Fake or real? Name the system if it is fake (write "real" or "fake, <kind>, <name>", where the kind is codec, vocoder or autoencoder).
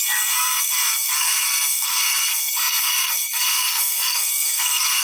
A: fake, codec, SNAC